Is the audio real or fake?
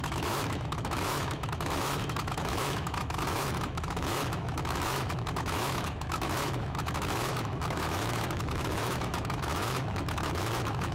fake